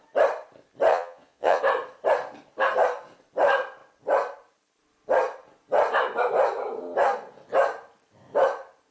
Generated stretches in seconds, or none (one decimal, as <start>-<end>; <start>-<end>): 0.9-1.6